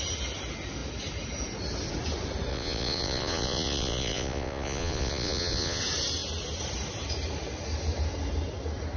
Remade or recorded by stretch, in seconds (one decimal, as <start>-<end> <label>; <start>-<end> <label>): 0.0-2.5 recorded; 2.5-5.8 remade; 5.8-9.0 recorded